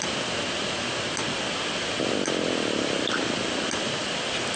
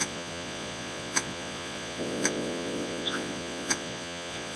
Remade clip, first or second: second